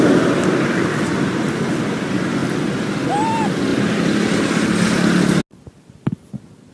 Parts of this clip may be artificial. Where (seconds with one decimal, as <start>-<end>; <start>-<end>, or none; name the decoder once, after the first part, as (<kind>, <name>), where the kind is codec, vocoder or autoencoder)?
none

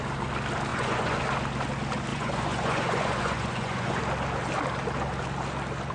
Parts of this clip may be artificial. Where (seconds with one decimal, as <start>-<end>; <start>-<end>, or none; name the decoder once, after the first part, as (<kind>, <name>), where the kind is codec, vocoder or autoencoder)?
0.7-1.2 (vocoder, Vocos); 2.1-4.0

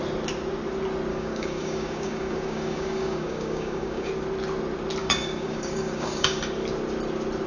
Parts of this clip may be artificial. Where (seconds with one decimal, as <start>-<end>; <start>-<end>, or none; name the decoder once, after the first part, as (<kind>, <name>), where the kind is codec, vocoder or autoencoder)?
1.1-4.1 (codec, DAC); 5.0-6.4

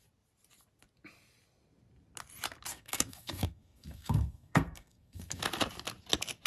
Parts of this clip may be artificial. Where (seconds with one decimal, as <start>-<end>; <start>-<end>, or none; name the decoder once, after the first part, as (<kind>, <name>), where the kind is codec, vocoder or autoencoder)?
2.7-5.4 (codec, SNAC)

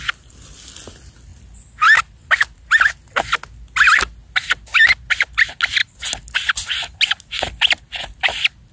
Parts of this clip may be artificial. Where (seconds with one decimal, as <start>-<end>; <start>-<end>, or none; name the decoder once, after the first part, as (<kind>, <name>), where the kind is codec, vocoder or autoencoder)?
none